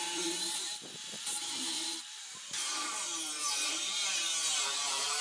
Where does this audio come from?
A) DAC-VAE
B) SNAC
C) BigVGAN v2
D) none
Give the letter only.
C